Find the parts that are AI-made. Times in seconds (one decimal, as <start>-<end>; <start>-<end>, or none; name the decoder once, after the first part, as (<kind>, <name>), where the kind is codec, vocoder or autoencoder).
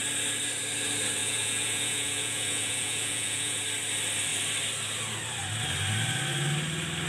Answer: 1.2-3.6 (vocoder, Vocos)